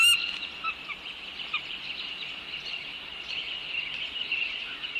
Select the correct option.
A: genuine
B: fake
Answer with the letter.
A